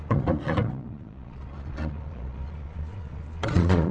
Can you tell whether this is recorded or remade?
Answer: remade